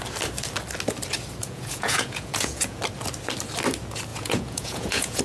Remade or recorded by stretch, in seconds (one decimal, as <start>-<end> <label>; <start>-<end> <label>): 0.0-1.4 recorded; 1.4-2.8 remade; 2.8-4.1 recorded; 4.1-5.2 remade